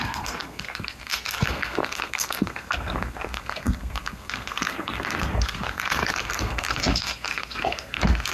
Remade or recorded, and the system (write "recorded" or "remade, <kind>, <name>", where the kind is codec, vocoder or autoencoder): remade, codec, SNAC